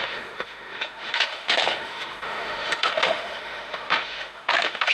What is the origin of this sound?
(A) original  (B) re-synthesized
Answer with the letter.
B